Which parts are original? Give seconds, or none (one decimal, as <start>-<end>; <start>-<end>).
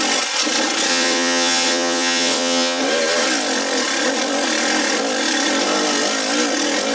0.0-0.9; 2.8-6.9